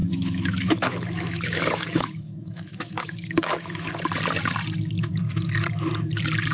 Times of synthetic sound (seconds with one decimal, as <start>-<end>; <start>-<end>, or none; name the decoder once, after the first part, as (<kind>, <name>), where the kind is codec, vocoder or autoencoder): 0.0-3.9 (autoencoder, DAC-VAE)